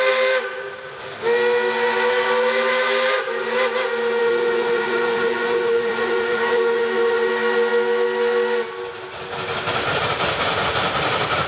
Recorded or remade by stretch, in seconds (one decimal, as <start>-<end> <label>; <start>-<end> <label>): 0.0-4.2 recorded; 4.2-7.3 remade; 7.3-11.5 recorded